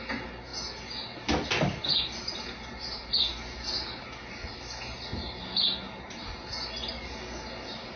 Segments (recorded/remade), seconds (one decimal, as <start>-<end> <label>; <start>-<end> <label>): 0.0-8.0 recorded